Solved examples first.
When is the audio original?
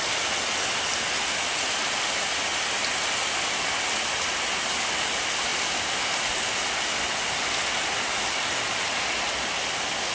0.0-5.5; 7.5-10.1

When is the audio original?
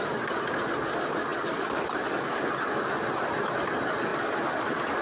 0.0-1.3; 3.1-4.1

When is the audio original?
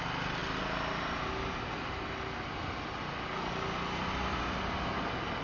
0.0-5.4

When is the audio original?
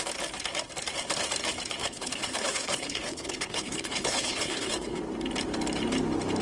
0.0-1.8; 5.0-6.4